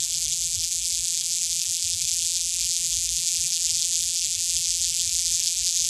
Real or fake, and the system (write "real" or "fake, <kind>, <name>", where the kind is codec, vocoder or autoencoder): fake, vocoder, BigVGAN v2